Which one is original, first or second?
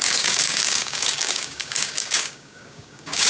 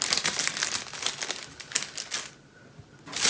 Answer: second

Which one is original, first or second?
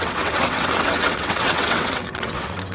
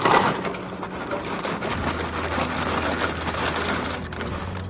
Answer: second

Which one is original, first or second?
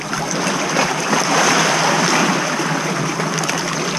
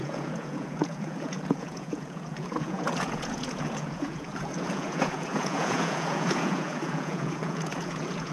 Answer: first